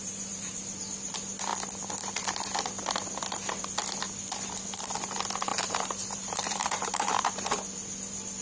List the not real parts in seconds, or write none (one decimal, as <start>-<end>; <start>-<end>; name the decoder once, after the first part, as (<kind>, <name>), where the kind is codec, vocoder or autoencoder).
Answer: 0.0-0.6 (vocoder, BigVGAN v2); 5.5-7.3